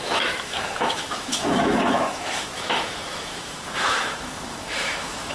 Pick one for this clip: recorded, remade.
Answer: remade